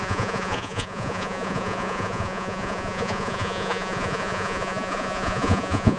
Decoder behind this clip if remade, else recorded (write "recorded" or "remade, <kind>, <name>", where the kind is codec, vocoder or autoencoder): remade, vocoder, Vocos